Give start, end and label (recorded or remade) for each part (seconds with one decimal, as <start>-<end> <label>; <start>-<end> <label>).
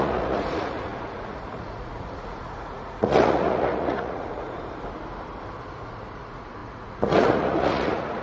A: 0.0-4.6 remade; 4.6-5.7 recorded; 5.7-8.2 remade